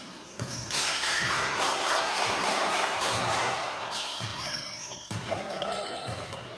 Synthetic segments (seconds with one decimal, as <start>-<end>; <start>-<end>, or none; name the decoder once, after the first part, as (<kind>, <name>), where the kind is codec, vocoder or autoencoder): 0.0-6.6 (codec, SNAC)